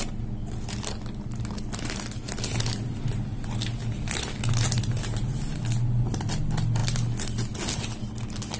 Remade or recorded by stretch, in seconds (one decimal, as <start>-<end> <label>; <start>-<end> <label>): 0.0-8.6 recorded

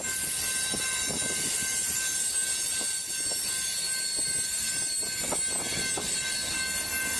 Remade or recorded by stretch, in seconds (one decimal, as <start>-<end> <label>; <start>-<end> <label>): 0.0-7.2 recorded

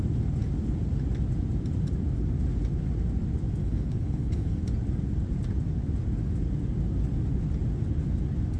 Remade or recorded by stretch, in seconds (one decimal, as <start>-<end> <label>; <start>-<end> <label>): 0.0-3.6 recorded; 3.6-4.6 remade; 4.6-8.6 recorded

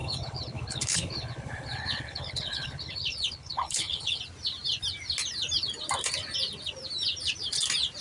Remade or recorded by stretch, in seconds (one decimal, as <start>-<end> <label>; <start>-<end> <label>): 0.0-4.2 remade; 4.2-8.0 recorded

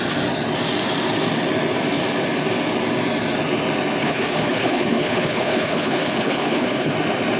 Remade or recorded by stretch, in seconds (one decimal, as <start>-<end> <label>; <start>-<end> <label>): 0.0-4.0 recorded; 4.0-6.9 remade; 6.9-7.4 recorded